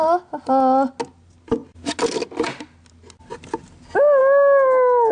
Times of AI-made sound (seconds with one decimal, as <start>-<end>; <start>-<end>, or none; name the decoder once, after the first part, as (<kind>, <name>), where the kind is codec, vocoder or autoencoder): none